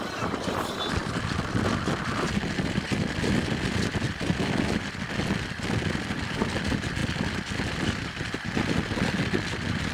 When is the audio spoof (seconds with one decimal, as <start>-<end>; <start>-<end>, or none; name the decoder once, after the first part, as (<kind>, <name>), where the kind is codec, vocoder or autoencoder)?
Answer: none